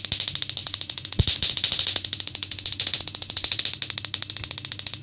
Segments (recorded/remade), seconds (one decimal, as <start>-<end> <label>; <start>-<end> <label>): 0.0-0.6 recorded; 0.6-3.6 remade; 3.6-5.0 recorded